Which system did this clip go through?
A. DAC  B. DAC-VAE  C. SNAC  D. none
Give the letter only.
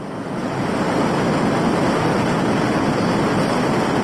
D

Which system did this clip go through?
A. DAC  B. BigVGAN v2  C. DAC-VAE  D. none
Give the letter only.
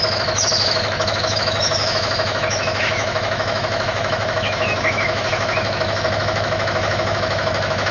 C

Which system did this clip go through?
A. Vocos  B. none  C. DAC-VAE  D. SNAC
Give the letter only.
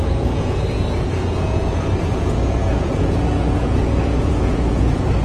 A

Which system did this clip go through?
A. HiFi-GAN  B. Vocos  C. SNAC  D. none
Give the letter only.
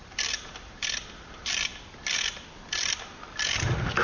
D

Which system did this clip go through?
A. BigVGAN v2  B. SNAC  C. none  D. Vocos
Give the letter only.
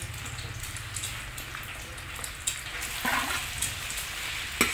C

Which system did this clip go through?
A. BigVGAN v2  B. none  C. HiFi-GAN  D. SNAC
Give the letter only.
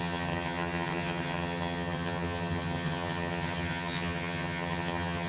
C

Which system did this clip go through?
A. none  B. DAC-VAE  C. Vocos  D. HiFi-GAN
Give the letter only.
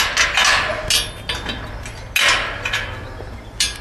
A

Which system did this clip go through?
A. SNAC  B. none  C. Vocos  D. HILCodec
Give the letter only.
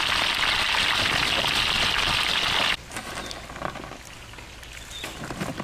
B